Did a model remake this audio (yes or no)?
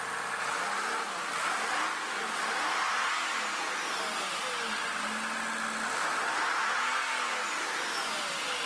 no